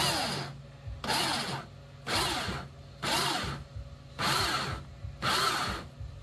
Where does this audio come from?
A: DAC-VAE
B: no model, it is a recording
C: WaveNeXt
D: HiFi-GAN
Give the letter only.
B